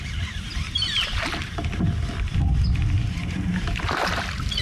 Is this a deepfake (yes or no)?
no